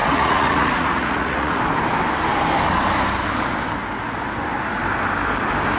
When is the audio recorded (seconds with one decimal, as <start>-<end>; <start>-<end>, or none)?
1.6-5.8